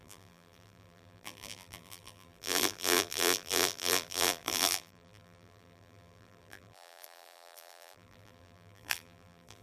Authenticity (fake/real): fake